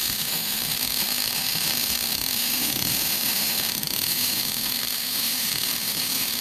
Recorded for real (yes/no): no